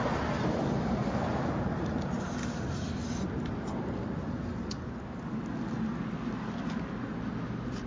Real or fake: real